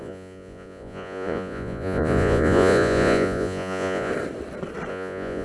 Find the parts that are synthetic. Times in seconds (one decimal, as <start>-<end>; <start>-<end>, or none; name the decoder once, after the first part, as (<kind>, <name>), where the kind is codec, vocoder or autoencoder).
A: 0.0-4.1 (vocoder, Vocos); 4.9-5.4